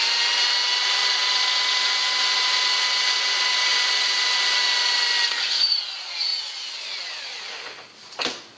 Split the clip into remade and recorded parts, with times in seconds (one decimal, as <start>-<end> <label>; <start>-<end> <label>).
0.0-8.6 recorded